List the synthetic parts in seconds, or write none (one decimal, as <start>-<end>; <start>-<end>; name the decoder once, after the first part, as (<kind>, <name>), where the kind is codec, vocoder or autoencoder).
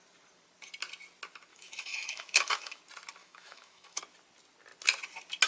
1.5-2.8 (autoencoder, DAC-VAE); 3.2-4.0